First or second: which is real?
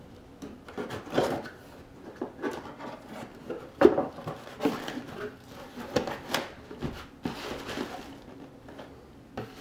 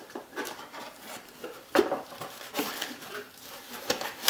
first